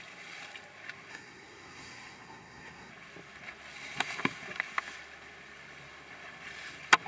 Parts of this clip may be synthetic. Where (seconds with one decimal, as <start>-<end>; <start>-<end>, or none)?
1.1-2.9